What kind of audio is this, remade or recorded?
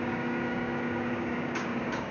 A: remade